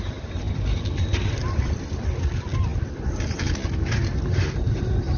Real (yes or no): yes